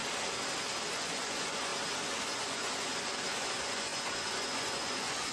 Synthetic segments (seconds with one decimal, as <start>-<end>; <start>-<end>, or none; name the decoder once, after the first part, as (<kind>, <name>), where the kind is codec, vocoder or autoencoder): 0.9-1.7 (vocoder, Vocos); 2.2-5.3